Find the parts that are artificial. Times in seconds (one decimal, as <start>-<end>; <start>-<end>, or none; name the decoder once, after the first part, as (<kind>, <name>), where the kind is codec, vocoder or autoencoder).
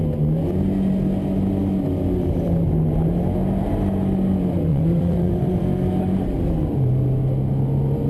4.7-5.6 (vocoder, Vocos)